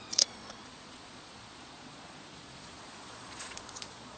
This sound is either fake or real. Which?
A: fake